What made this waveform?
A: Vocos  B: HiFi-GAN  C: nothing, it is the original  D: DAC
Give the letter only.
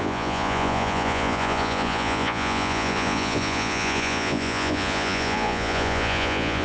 A